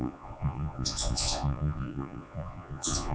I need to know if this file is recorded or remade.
remade